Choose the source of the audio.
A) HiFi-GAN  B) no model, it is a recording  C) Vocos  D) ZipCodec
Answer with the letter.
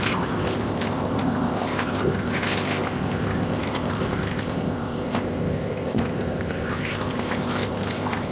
D